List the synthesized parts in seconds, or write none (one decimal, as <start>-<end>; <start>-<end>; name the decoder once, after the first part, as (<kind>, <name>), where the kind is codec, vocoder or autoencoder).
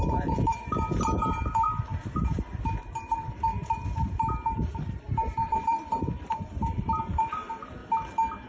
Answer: 0.0-7.8 (vocoder, BigVGAN v2)